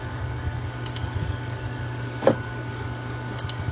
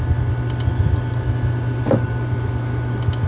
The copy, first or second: first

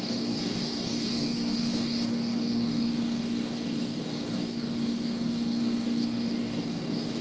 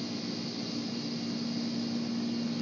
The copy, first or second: first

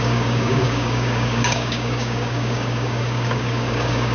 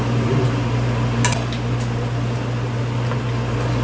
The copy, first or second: first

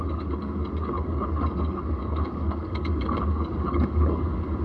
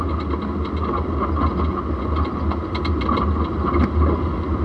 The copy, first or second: first